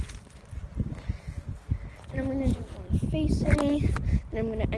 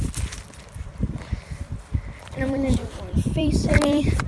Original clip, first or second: first